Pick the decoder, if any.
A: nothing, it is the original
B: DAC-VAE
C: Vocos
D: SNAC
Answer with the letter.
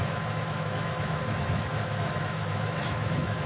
B